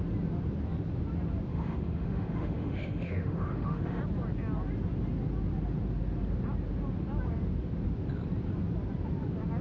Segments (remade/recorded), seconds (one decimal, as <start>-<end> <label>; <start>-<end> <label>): 0.0-1.5 recorded; 1.5-4.0 remade; 4.0-9.6 recorded